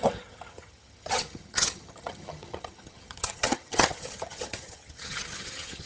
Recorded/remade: remade